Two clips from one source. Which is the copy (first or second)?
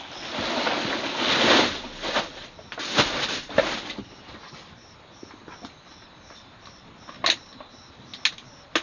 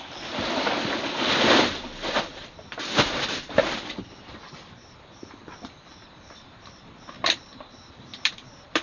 second